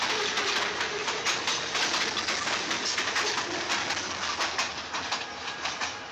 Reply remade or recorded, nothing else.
recorded